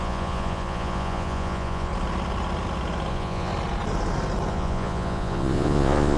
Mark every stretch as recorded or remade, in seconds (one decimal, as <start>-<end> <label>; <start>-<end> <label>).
0.0-1.9 remade; 1.9-3.1 recorded; 3.1-3.5 remade; 3.5-4.5 recorded; 4.5-6.2 remade